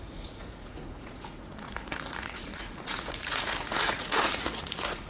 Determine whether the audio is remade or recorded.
remade